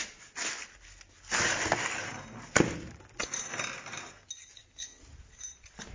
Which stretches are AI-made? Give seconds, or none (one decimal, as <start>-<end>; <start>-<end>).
none